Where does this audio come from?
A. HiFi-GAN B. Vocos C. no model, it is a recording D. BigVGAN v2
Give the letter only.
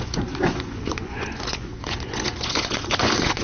B